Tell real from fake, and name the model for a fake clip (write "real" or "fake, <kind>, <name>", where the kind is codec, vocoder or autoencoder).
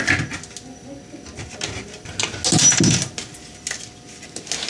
real